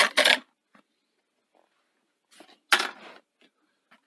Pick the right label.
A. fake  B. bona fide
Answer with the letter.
B